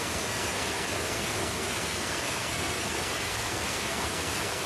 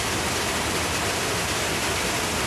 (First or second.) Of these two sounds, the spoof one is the first